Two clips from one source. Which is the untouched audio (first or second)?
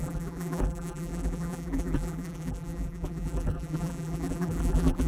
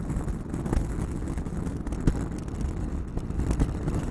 second